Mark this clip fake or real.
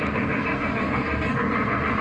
fake